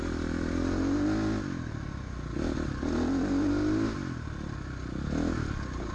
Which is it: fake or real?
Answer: real